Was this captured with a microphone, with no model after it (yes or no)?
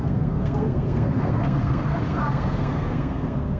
no